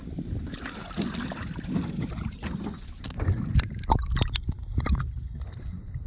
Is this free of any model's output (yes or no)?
yes